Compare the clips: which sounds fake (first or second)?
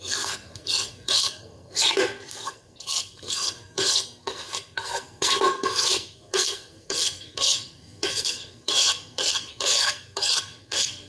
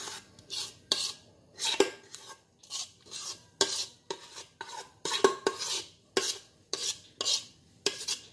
first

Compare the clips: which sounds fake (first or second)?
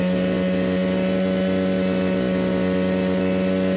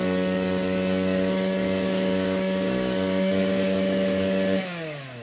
second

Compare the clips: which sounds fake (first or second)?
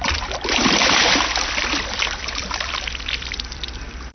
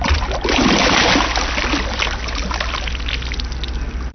first